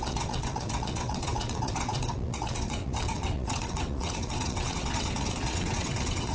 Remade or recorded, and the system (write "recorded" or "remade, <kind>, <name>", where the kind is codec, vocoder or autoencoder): remade, vocoder, WaveNeXt